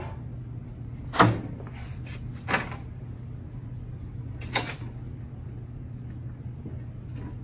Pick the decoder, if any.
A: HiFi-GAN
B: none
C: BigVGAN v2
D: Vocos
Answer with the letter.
B